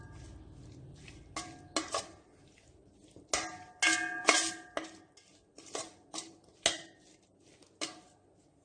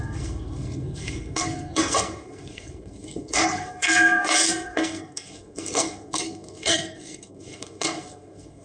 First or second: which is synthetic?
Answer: second